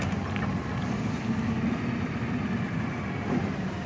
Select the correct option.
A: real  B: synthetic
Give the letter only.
A